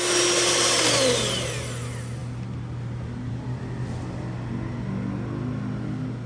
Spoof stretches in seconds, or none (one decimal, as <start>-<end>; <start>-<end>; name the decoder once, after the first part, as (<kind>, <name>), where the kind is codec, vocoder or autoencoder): none